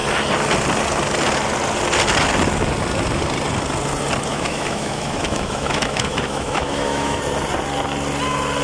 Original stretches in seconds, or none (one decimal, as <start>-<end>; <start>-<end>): 0.0-4.3; 7.2-8.6